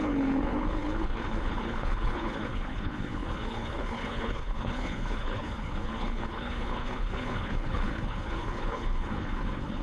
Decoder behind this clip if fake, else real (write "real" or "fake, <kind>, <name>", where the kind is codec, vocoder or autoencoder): fake, codec, HILCodec